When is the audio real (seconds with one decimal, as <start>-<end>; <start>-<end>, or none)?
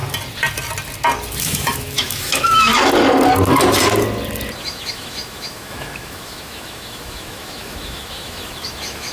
0.0-1.4; 2.7-4.6